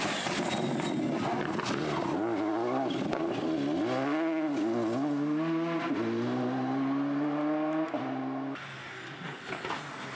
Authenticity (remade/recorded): recorded